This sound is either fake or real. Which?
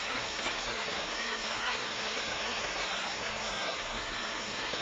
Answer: fake